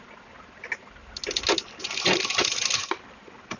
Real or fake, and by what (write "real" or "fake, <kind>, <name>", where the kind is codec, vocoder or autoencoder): real